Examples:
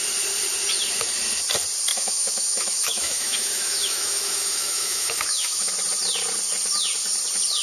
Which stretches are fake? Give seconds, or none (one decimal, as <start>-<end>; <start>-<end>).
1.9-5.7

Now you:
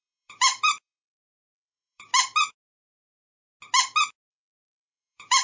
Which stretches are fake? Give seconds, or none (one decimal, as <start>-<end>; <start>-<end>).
0.0-2.1; 4.3-5.4

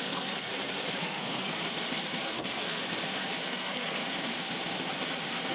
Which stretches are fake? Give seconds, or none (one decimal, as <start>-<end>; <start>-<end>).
0.0-0.5; 1.0-1.6; 2.2-2.8; 3.4-4.0

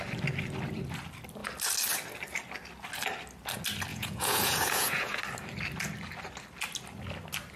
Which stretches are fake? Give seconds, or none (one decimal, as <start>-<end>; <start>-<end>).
3.9-5.2

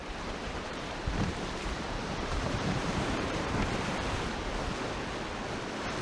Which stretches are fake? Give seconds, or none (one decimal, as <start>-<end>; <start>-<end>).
0.0-3.6